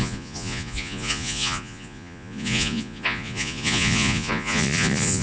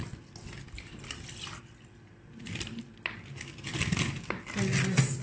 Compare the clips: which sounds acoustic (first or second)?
second